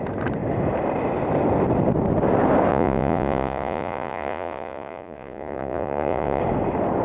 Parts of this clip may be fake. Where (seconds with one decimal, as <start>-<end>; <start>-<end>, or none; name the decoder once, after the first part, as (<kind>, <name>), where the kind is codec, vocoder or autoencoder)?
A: 2.7-6.4 (vocoder, Vocos)